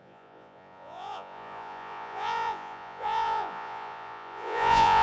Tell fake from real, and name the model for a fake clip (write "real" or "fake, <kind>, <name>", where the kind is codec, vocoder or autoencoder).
fake, vocoder, Vocos